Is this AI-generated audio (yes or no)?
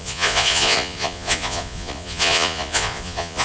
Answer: yes